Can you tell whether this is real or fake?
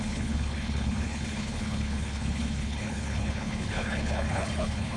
fake